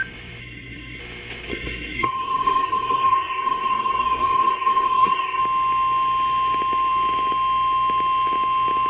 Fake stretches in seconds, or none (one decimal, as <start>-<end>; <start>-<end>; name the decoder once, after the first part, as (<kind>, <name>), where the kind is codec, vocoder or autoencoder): 0.4-1.0 (codec, SNAC); 1.5-5.4